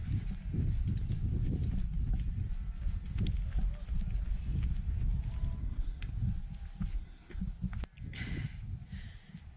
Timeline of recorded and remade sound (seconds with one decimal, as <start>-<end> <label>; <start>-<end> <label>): 0.0-5.6 recorded; 5.6-6.1 remade; 6.1-6.9 recorded; 6.9-7.4 remade; 7.4-9.6 recorded